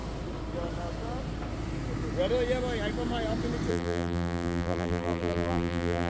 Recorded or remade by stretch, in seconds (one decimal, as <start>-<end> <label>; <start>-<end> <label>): 0.0-3.7 recorded; 3.7-6.1 remade